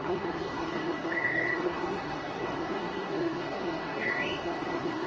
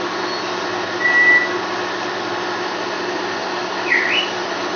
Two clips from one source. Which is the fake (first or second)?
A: first